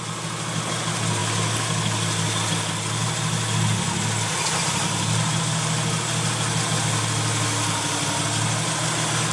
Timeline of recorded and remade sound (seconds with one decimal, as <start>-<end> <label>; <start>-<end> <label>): 0.0-9.3 recorded